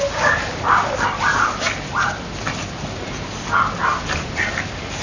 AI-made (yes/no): no